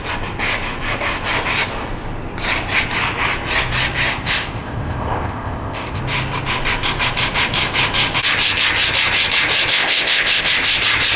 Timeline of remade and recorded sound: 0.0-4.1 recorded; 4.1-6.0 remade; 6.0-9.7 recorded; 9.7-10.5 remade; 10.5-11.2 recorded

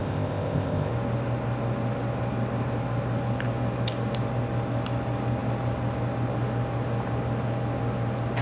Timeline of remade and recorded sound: 0.0-0.9 remade; 0.9-8.4 recorded